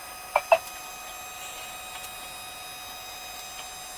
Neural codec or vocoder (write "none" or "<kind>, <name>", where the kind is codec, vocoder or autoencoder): none